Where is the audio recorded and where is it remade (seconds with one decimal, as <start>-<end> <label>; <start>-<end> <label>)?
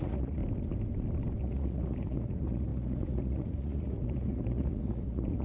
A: 0.0-0.4 remade; 0.4-1.4 recorded; 1.4-5.4 remade